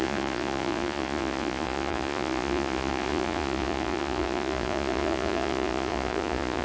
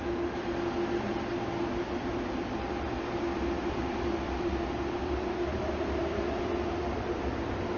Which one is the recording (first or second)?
second